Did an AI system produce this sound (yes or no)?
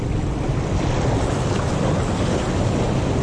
no